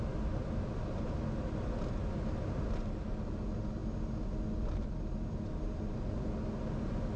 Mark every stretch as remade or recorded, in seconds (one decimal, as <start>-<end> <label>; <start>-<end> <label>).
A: 0.0-7.2 recorded